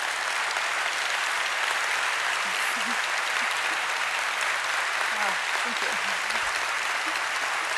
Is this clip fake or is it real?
real